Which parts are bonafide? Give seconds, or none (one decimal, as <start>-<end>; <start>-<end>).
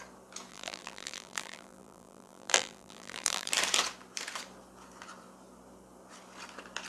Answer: 0.0-0.5; 3.5-6.9